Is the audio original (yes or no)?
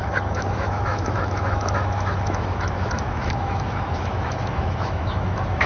no